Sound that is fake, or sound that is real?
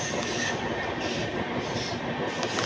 real